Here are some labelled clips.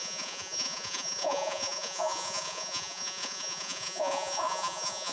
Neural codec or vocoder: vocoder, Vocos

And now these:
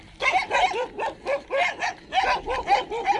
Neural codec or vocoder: none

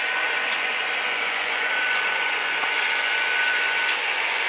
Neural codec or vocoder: vocoder, Vocos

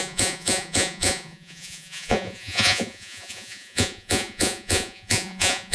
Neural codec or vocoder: vocoder, Vocos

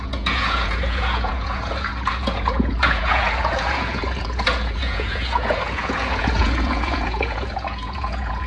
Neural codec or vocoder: vocoder, Vocos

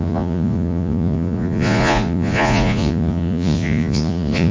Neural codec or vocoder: vocoder, Vocos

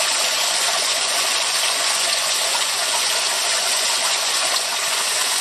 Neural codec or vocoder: vocoder, Vocos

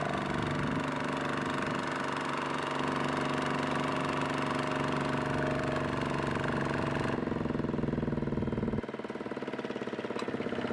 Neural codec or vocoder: none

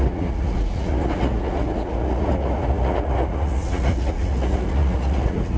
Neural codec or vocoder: vocoder, Vocos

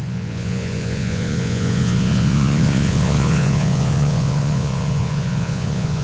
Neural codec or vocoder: vocoder, Vocos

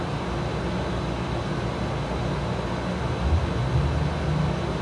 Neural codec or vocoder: none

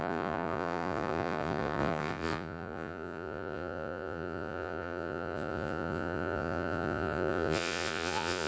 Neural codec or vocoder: vocoder, Vocos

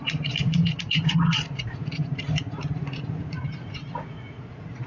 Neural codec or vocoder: vocoder, Vocos